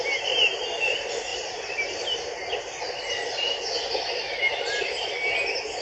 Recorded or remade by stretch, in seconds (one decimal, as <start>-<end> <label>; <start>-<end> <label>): 0.0-5.8 recorded

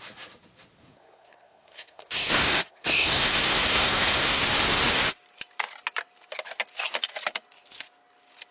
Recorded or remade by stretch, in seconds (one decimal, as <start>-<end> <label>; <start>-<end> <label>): 0.0-0.8 recorded; 0.8-4.4 remade; 4.4-8.5 recorded

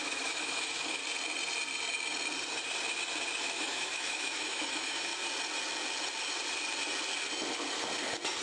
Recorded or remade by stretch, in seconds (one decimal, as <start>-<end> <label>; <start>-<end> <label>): 0.0-1.0 remade; 1.0-3.4 recorded; 3.4-5.1 remade; 5.1-8.4 recorded

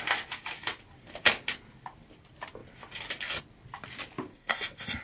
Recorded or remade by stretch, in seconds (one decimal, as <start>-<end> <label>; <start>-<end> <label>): 0.0-4.3 recorded; 4.3-5.0 remade